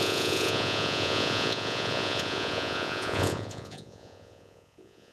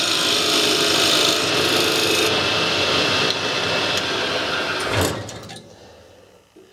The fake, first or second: first